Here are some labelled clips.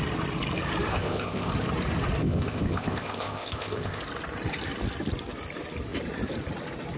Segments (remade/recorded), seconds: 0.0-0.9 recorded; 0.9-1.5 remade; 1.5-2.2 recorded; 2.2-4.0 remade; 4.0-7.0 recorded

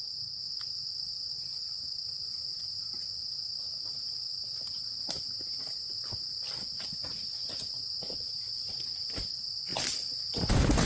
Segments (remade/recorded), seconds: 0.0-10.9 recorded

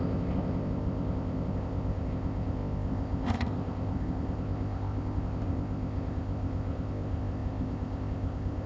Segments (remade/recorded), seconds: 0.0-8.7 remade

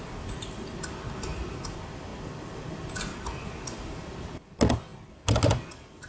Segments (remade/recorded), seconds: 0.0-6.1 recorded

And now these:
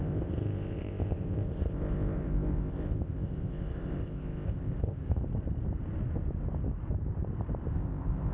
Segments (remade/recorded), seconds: 0.0-5.2 remade; 5.2-7.7 recorded; 7.7-8.3 remade

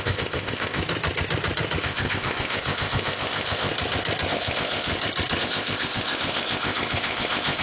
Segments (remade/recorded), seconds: 0.0-0.8 remade; 0.8-1.8 recorded; 1.8-3.7 remade; 3.7-4.3 recorded; 4.3-4.9 remade; 4.9-5.4 recorded; 5.4-7.6 remade